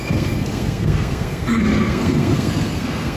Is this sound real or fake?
fake